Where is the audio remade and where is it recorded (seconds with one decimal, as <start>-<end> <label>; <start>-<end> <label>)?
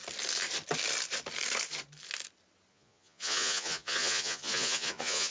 0.0-2.7 recorded; 2.7-5.3 remade